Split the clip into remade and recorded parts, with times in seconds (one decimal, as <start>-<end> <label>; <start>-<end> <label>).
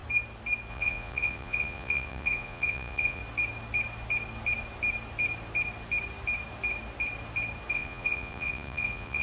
0.0-0.7 recorded; 0.7-3.2 remade; 3.2-7.7 recorded; 7.7-9.2 remade